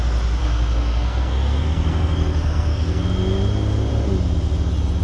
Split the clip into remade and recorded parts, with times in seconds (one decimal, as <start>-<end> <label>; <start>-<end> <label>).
0.0-0.4 recorded; 0.4-3.0 remade; 3.0-5.0 recorded